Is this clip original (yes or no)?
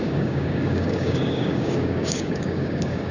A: no